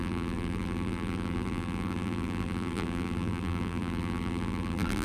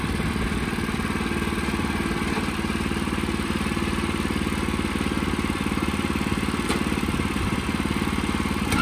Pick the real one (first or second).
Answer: second